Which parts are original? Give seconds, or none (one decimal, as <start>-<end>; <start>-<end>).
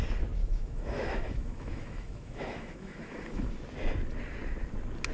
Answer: 0.0-0.4; 3.5-5.1